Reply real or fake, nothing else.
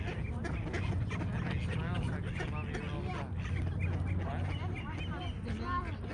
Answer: real